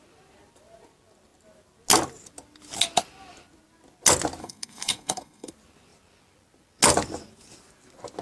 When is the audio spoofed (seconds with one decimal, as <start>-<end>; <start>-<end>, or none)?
4.4-5.5